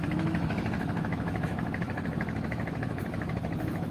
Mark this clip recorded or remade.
remade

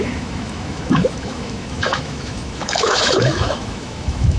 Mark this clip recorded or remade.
remade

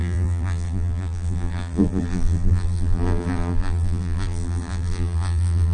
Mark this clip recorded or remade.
remade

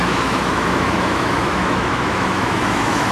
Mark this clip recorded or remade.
remade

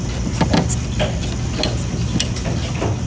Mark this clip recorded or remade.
recorded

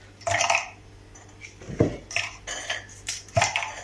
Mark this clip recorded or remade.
recorded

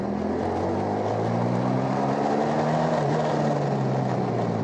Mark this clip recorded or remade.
recorded